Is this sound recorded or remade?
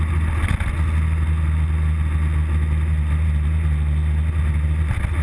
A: recorded